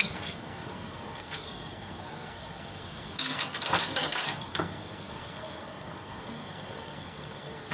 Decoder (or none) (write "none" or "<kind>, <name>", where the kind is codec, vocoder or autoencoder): codec, SNAC